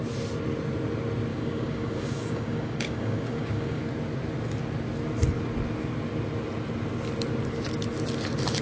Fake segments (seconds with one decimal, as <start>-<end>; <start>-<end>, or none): 1.3-3.8